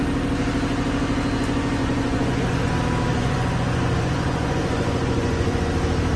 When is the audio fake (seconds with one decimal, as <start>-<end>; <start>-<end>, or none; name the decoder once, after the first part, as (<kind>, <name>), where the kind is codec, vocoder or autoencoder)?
1.8-2.7 (vocoder, Vocos); 3.1-5.7